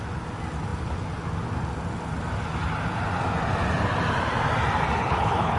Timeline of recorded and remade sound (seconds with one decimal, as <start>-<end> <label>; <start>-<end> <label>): 0.0-5.0 recorded; 5.0-5.6 remade